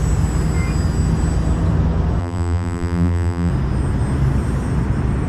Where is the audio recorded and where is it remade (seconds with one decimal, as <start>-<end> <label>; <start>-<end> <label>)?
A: 0.0-2.2 recorded; 2.2-3.5 remade; 3.5-5.3 recorded